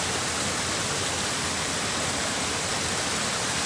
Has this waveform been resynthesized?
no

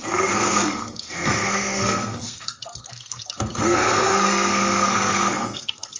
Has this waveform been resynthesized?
yes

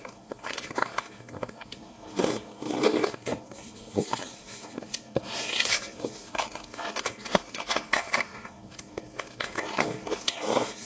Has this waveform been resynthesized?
yes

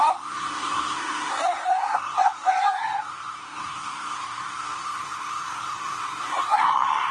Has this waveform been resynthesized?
yes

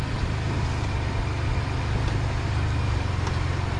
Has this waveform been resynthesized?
no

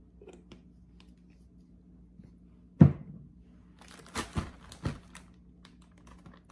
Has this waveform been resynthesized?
no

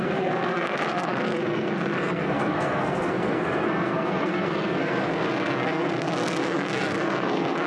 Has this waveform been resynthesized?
yes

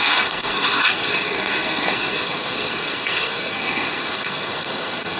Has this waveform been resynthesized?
yes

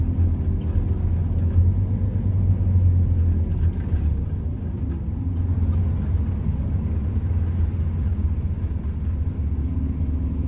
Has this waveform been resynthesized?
no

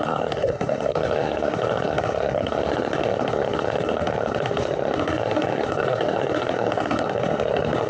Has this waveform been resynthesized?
yes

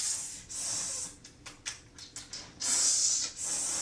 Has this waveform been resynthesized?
no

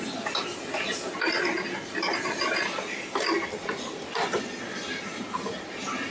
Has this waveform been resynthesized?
no